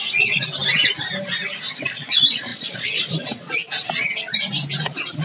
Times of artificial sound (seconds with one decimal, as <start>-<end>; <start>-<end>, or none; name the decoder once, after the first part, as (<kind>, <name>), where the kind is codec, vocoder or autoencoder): 0.0-0.5 (vocoder, Vocos); 1.9-3.6; 4.8-5.2

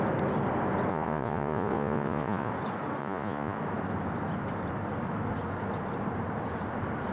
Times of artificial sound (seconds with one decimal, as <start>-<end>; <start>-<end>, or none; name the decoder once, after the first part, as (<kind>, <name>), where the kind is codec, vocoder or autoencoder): 0.9-2.5 (vocoder, Vocos); 3.0-3.6